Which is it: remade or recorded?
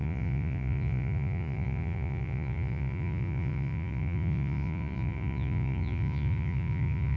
remade